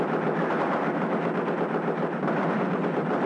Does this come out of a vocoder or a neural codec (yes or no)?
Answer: yes